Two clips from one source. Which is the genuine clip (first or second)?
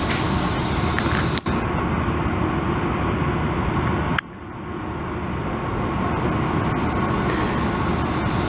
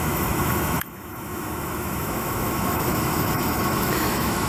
first